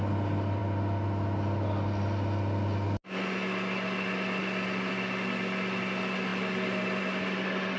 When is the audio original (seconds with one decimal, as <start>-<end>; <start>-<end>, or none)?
0.0-7.8

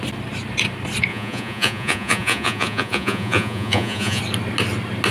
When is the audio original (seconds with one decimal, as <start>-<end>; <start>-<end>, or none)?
0.0-1.1; 4.2-5.1

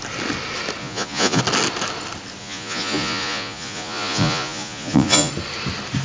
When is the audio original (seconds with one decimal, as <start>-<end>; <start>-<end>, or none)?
0.0-0.8; 1.4-2.4; 5.3-6.0

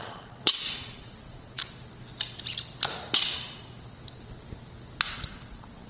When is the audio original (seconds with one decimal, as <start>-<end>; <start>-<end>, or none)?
1.6-5.1

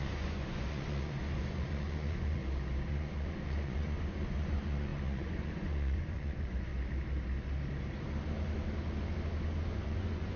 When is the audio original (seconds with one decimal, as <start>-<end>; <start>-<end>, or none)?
2.4-2.9; 6.7-9.7

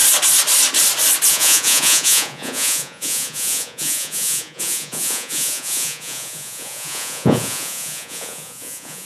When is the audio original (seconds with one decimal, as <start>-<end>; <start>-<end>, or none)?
0.0-1.3

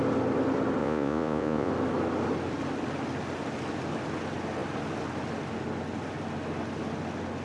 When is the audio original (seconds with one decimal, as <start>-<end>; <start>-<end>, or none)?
0.0-0.8; 1.7-7.4

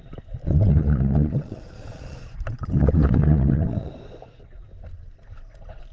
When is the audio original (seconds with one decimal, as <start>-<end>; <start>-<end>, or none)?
0.0-0.4; 3.9-5.9